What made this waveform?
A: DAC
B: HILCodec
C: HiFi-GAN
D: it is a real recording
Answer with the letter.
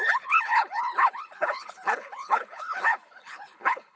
B